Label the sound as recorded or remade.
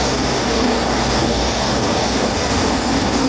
remade